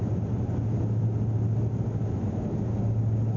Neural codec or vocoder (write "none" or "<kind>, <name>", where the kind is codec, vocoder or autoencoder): none